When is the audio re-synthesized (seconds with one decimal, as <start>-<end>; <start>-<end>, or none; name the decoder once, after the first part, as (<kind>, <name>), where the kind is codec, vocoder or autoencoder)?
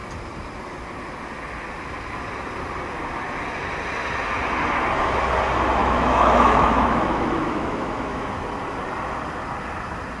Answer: 5.8-8.3 (autoencoder, DAC-VAE)